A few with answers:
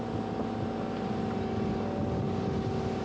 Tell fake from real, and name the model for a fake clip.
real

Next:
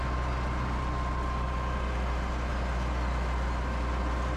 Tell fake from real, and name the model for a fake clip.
real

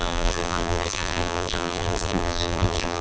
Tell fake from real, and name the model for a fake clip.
fake, vocoder, BigVGAN v2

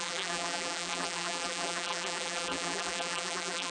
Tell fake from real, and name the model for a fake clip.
fake, vocoder, BigVGAN v2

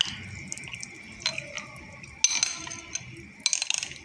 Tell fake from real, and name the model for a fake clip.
real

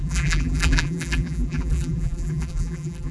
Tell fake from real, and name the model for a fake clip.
fake, vocoder, BigVGAN v2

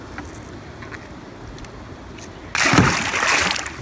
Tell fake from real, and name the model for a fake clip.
real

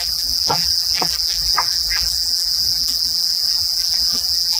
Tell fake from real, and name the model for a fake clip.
fake, vocoder, BigVGAN v2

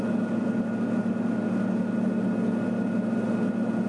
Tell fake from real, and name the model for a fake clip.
real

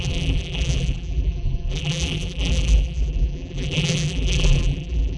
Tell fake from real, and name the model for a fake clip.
fake, vocoder, BigVGAN v2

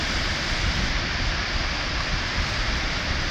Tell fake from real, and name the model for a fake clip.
fake, vocoder, BigVGAN v2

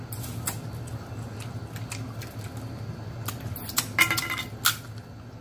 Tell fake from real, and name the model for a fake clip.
real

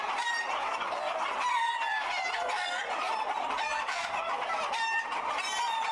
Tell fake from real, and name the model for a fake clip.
fake, vocoder, BigVGAN v2